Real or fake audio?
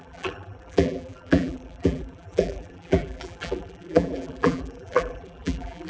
fake